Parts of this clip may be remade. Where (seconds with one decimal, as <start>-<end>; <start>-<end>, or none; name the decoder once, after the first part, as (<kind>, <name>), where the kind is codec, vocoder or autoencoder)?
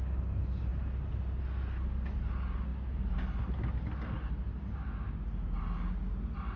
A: none